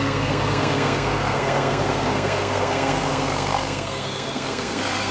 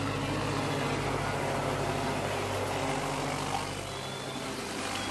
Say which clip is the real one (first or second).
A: second